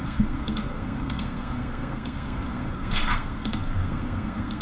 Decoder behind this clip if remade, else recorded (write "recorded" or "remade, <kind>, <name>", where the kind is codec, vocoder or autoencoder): remade, codec, SNAC